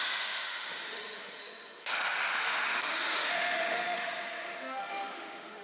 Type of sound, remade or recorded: remade